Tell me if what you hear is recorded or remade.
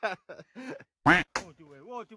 recorded